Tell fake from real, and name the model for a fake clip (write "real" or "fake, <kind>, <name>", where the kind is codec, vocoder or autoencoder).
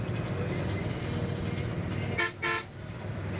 real